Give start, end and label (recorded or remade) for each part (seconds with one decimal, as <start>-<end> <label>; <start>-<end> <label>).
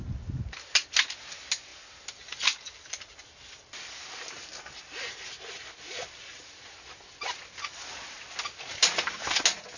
0.0-9.8 recorded